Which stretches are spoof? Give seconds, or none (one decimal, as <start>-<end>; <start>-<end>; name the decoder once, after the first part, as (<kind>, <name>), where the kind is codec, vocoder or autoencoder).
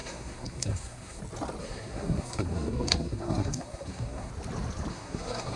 0.0-1.2 (codec, SNAC); 1.6-4.3; 4.9-5.6